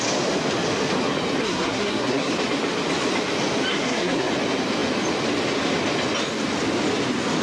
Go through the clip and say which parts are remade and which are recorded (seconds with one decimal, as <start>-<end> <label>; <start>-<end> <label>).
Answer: 0.0-1.4 recorded; 1.4-2.3 remade; 2.3-3.7 recorded; 3.7-4.3 remade; 4.3-7.4 recorded

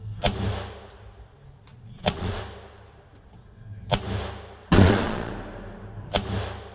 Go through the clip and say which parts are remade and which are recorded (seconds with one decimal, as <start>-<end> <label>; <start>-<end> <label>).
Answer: 0.0-1.7 recorded; 1.7-2.4 remade; 2.4-4.6 recorded; 4.6-5.3 remade; 5.3-6.7 recorded

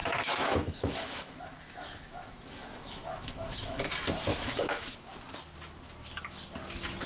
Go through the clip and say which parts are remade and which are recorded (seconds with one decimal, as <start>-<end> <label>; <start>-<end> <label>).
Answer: 0.0-3.9 remade; 3.9-4.3 recorded; 4.3-5.1 remade; 5.1-7.1 recorded

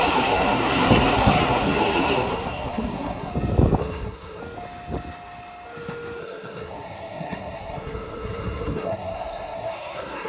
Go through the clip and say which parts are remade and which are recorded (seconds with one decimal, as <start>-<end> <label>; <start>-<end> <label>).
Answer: 0.0-3.3 remade; 3.3-3.8 recorded; 3.8-4.4 remade; 4.4-6.2 recorded; 6.2-10.3 remade